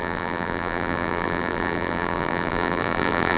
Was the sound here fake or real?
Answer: fake